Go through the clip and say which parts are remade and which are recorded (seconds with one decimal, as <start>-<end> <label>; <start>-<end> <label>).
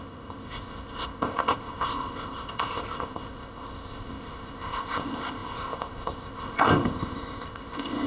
0.0-8.1 remade